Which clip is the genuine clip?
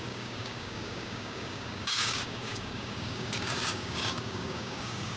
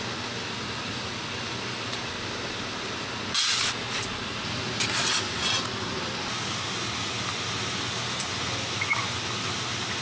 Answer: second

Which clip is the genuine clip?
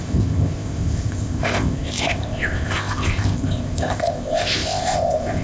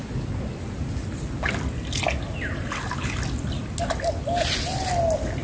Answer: second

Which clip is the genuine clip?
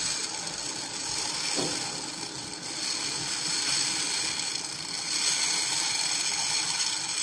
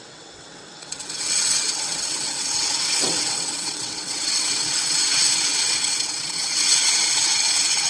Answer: first